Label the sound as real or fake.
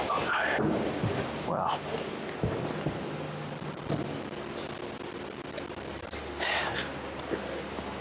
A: real